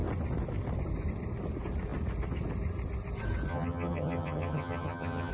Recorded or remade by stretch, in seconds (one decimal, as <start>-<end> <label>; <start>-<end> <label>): 0.0-3.5 recorded; 3.5-5.3 remade